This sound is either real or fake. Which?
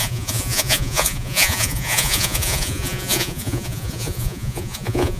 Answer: fake